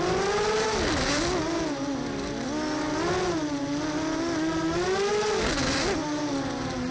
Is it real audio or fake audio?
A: real